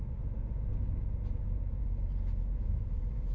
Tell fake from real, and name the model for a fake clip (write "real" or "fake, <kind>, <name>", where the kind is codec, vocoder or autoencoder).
fake, vocoder, Vocos